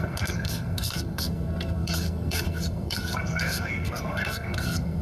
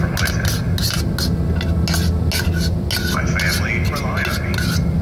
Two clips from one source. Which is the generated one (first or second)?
first